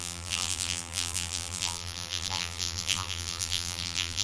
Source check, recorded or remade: remade